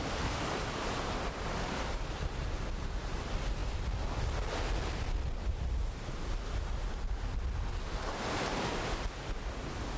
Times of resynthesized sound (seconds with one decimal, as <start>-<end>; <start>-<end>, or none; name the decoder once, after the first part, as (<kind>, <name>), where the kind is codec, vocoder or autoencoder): none